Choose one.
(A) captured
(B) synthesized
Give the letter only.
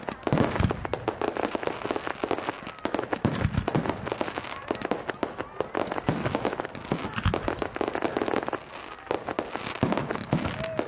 A